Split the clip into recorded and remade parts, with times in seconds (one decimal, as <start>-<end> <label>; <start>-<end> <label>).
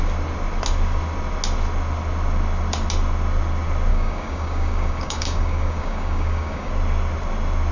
0.0-3.9 recorded; 3.9-6.7 remade; 6.7-7.7 recorded